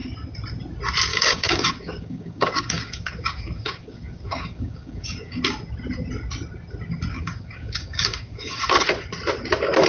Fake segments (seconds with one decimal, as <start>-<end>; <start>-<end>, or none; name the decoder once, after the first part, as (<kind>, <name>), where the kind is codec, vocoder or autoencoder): 1.1-5.4 (codec, DAC); 7.1-8.6